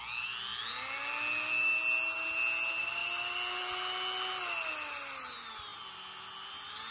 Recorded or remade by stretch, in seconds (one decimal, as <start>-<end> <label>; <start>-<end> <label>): 0.0-6.9 recorded